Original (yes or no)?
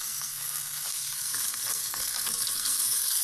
no